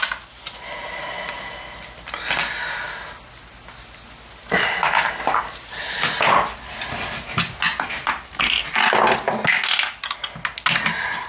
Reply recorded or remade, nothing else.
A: recorded